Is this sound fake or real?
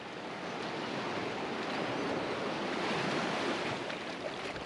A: real